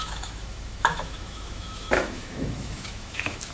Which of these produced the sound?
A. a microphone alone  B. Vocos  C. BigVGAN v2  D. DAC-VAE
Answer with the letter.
D